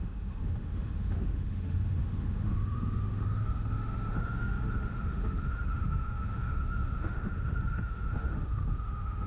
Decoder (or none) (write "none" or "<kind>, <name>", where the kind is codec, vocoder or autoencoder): autoencoder, DAC-VAE